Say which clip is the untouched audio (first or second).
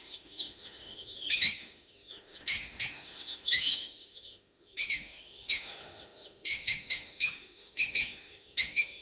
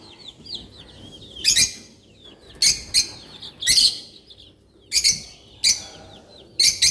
second